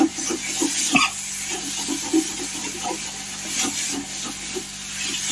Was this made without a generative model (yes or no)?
yes